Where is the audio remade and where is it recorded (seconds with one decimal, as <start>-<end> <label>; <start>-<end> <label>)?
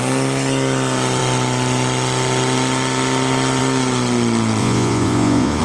0.0-4.6 recorded; 4.6-5.6 remade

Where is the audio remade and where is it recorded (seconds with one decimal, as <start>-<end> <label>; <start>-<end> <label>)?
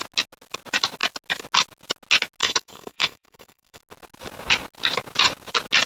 0.0-2.4 recorded; 2.4-3.8 remade; 3.8-5.9 recorded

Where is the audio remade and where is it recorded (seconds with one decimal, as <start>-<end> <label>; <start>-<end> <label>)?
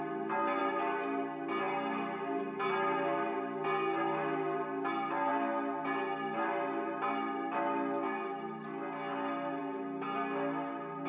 0.0-11.1 recorded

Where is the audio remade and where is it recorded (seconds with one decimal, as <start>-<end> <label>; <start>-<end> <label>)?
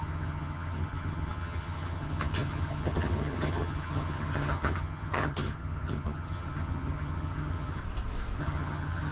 0.0-7.8 remade; 7.8-8.4 recorded; 8.4-9.1 remade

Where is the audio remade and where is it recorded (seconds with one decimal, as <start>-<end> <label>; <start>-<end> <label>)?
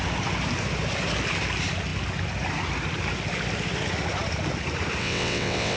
0.0-5.0 recorded; 5.0-5.8 remade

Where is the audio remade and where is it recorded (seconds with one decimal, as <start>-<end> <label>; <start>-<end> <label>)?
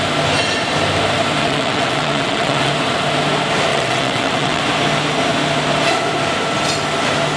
0.0-1.4 recorded; 1.4-2.7 remade; 2.7-3.7 recorded; 3.7-4.6 remade; 4.6-7.4 recorded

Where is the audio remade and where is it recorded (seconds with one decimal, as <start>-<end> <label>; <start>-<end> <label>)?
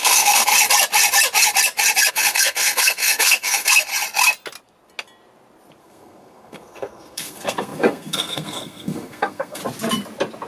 0.0-0.5 remade; 0.5-2.1 recorded; 2.1-3.9 remade; 3.9-5.8 recorded; 5.8-9.6 remade; 9.6-10.5 recorded